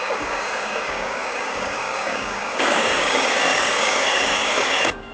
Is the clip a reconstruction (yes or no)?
yes